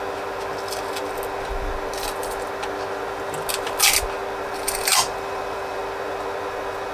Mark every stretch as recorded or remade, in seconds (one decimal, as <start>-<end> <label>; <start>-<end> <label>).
0.0-4.9 recorded; 4.9-5.8 remade; 5.8-6.9 recorded